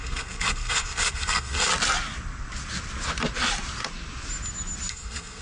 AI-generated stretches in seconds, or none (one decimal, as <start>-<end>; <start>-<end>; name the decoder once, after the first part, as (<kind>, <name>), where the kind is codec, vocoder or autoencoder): 0.0-1.7 (codec, SNAC); 4.9-5.4